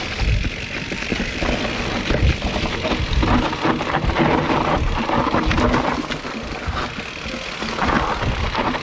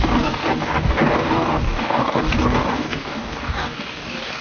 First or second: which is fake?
second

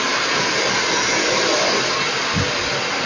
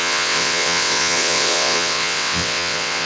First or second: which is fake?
second